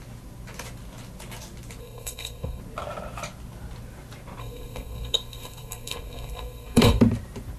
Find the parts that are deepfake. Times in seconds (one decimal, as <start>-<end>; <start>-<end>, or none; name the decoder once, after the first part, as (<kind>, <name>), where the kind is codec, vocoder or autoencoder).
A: 1.8-2.6 (codec, SNAC); 4.4-7.0